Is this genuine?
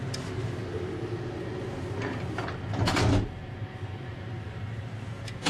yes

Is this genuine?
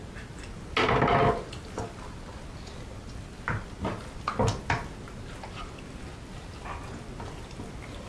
yes